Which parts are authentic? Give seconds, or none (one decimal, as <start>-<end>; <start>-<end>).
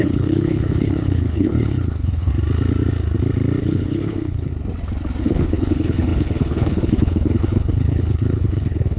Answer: 2.3-3.6; 4.5-5.2